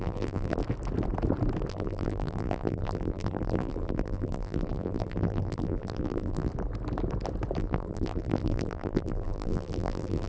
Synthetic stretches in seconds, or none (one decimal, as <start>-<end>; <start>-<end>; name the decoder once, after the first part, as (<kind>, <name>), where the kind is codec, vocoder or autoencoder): 0.0-0.6 (vocoder, BigVGAN v2); 1.7-6.5; 7.6-10.3